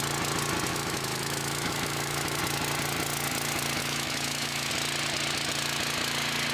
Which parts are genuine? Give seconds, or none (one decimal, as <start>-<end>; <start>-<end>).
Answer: 0.0-0.7; 2.4-3.8; 4.7-6.5